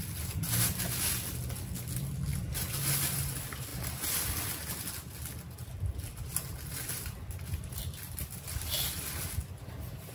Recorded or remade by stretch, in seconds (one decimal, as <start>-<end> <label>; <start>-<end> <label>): 0.0-10.1 recorded